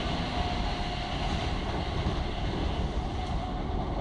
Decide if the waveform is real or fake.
real